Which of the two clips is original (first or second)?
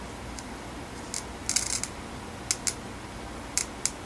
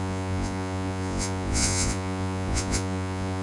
first